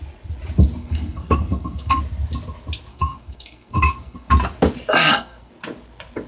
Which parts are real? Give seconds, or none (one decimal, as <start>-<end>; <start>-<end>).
0.0-0.8; 2.0-2.9; 4.3-5.0; 5.5-6.3